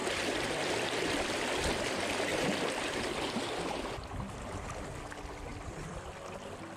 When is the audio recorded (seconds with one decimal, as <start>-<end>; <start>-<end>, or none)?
0.0-5.5; 6.0-6.8